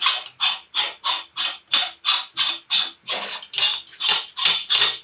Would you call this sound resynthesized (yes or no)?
no